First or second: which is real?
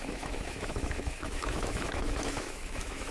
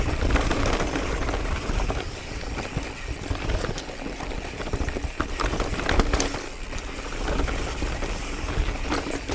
second